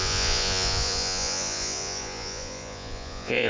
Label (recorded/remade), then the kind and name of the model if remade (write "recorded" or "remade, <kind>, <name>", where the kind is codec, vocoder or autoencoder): remade, vocoder, Vocos